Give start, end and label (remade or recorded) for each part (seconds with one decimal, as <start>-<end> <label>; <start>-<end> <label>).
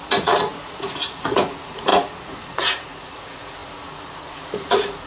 0.0-5.1 remade